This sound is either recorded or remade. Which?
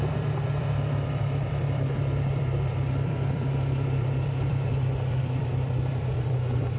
remade